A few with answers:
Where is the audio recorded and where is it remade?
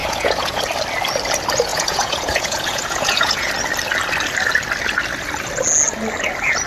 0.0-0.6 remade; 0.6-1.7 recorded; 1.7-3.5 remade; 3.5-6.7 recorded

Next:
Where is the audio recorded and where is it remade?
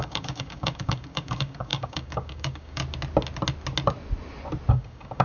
0.0-2.8 remade; 2.8-4.7 recorded; 4.7-5.2 remade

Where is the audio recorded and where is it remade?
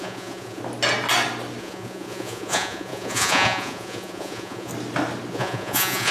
0.0-0.6 remade; 0.6-1.6 recorded; 1.6-4.7 remade; 4.7-5.3 recorded; 5.3-6.1 remade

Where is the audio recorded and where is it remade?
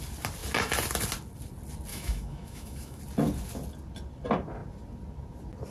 0.0-1.9 recorded; 1.9-3.0 remade; 3.0-5.7 recorded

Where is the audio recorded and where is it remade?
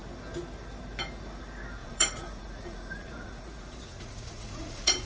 0.0-1.8 recorded; 1.8-5.1 remade